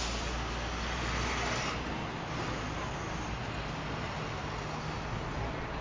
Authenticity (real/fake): real